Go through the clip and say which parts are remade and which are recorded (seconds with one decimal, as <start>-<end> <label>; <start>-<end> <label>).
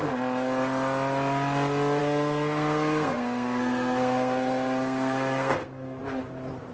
0.0-2.0 recorded; 2.0-6.0 remade; 6.0-6.7 recorded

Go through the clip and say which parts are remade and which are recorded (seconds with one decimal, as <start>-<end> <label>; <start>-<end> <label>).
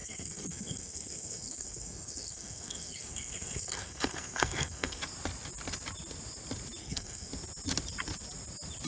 0.0-5.0 remade; 5.0-6.8 recorded; 6.8-7.3 remade; 7.3-8.9 recorded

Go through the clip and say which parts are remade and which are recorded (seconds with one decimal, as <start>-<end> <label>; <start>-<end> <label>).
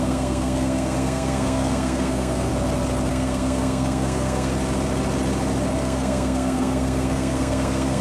0.0-2.5 remade; 2.5-3.1 recorded; 3.1-4.5 remade; 4.5-5.8 recorded; 5.8-8.0 remade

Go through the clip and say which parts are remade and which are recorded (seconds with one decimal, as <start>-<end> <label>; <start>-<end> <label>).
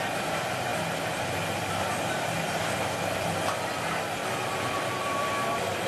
0.0-5.9 recorded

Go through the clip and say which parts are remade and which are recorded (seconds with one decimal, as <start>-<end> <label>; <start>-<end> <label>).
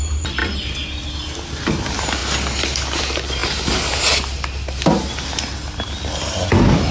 0.0-6.9 recorded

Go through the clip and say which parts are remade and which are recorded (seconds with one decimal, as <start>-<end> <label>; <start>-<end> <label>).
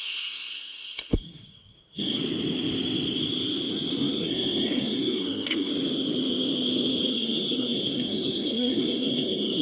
0.0-2.2 remade; 2.2-3.7 recorded; 3.7-5.7 remade; 5.7-7.1 recorded; 7.1-9.6 remade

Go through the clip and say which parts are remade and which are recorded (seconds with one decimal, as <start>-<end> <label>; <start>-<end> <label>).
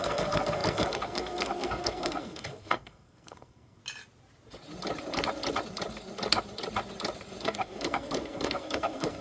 0.0-3.8 remade; 3.8-7.4 recorded; 7.4-9.2 remade